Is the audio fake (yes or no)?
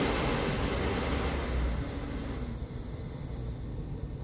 no